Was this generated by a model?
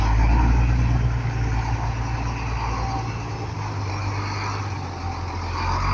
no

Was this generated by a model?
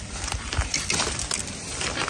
no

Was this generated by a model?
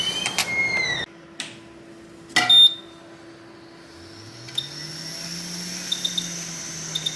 no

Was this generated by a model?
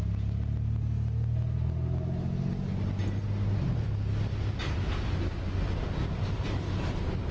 no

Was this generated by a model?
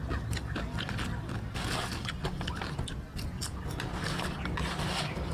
no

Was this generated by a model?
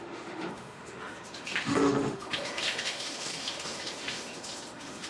yes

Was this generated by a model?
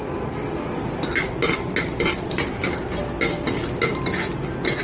no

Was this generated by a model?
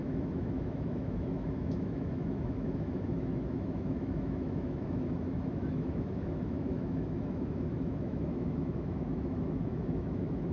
yes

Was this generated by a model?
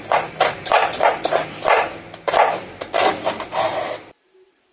no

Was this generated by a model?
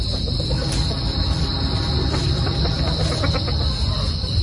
no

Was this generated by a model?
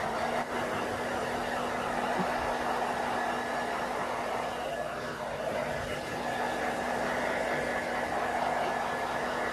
no